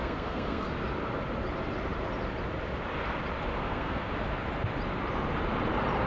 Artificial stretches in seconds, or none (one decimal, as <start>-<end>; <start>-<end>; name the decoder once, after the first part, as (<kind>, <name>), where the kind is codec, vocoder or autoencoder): 0.0-0.7 (codec, SNAC); 3.6-4.1